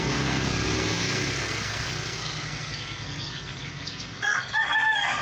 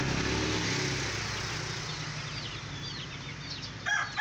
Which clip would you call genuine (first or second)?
second